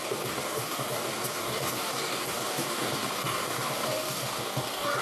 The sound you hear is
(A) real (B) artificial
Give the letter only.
B